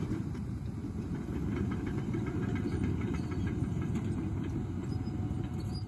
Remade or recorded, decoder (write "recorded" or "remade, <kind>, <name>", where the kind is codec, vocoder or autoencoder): remade, vocoder, BigVGAN v2